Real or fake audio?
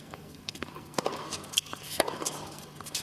fake